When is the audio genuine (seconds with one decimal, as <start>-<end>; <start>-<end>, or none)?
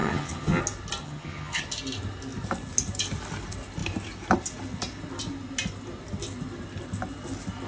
0.6-1.0; 1.6-7.7